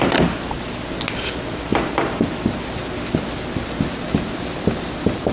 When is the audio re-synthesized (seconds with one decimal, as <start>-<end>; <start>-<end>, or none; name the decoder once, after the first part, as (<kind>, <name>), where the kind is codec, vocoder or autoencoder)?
none